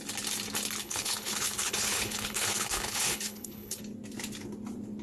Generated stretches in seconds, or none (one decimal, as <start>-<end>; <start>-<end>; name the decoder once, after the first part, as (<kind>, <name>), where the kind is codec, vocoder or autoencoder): 0.8-3.8 (codec, HILCodec)